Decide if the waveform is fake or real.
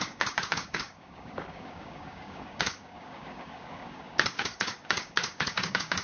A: fake